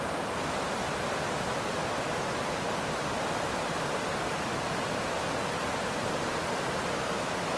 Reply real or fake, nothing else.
real